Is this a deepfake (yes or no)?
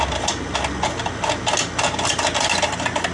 no